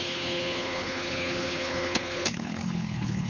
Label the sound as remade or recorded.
remade